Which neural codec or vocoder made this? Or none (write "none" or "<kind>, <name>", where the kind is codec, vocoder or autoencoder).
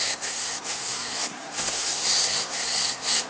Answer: codec, SNAC